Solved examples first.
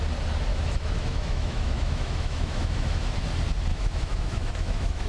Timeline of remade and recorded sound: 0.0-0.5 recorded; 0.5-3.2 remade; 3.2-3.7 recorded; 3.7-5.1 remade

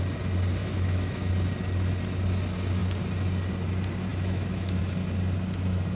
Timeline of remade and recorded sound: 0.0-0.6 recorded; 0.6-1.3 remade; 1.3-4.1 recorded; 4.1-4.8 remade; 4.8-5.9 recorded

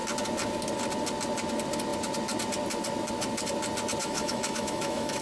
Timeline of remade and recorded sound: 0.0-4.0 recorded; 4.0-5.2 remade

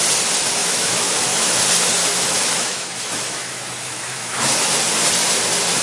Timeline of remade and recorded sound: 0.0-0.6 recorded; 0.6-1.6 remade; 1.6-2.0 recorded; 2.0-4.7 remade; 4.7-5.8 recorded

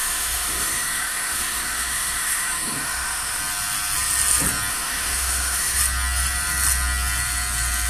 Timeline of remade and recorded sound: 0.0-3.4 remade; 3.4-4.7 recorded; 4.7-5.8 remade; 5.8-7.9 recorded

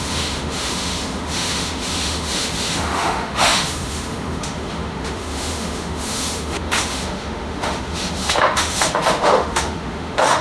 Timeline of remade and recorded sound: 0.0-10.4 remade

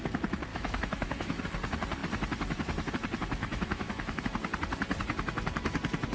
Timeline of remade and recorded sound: 0.0-0.5 recorded; 0.5-1.4 remade; 1.4-3.4 recorded; 3.4-4.2 remade; 4.2-6.1 recorded

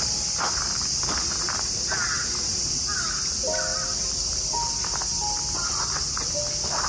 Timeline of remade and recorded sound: 0.0-6.9 recorded